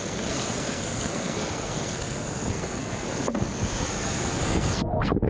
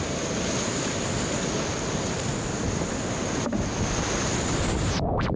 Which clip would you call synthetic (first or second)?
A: first